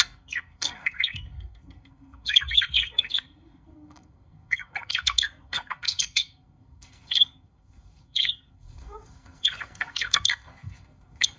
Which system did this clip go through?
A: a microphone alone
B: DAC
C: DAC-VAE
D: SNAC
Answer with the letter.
D